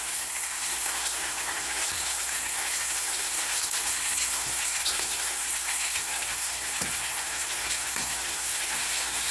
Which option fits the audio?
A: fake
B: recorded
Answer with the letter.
A